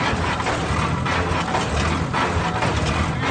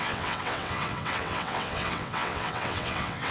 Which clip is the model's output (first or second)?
second